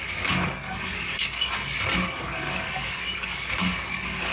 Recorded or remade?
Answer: remade